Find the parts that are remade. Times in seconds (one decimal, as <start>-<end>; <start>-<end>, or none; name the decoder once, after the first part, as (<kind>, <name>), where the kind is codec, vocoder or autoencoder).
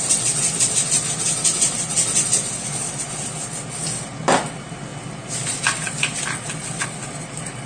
none